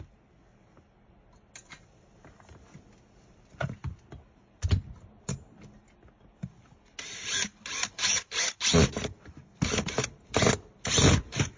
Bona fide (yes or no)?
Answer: yes